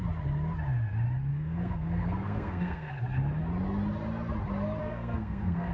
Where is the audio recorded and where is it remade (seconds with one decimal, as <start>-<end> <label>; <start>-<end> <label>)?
0.0-1.3 recorded; 1.3-3.0 remade; 3.0-4.8 recorded; 4.8-5.7 remade